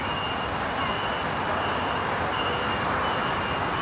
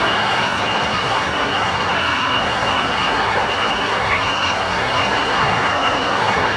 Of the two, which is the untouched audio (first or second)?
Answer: first